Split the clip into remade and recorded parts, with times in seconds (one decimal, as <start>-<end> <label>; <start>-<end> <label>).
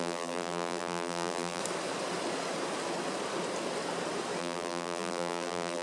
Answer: 0.0-1.6 remade; 1.6-4.4 recorded; 4.4-5.8 remade